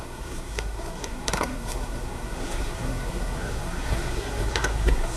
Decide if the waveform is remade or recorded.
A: remade